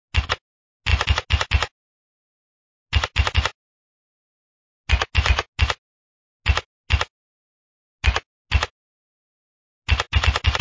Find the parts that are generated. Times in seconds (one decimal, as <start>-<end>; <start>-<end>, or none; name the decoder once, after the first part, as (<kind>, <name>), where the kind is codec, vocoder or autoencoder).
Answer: none